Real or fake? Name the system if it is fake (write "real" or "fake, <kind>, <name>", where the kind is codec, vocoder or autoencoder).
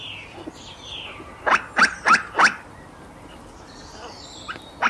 real